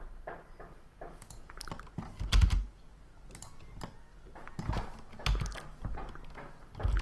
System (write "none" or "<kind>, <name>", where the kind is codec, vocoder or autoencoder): none